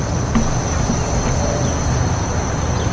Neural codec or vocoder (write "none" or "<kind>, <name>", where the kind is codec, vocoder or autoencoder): none